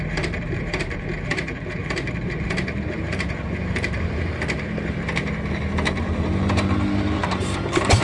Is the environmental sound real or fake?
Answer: fake